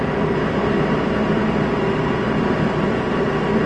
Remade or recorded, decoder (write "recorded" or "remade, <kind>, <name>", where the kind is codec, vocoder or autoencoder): recorded